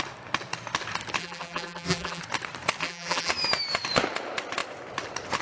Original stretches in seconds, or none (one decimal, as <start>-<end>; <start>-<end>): 0.0-1.2; 2.2-2.8; 3.3-5.4